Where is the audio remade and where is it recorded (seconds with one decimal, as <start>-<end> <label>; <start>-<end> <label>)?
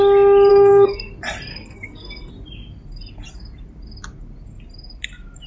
0.0-0.5 recorded; 0.5-1.1 remade; 1.1-1.5 recorded; 1.5-2.3 remade; 2.3-5.5 recorded